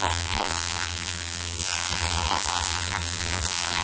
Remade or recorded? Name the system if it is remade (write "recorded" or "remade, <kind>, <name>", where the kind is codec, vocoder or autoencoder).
remade, vocoder, BigVGAN v2